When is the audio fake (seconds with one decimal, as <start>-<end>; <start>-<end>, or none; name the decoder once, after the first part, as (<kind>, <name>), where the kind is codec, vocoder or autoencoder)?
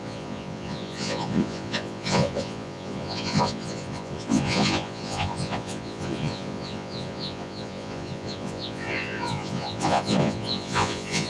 0.0-11.3 (vocoder, Vocos)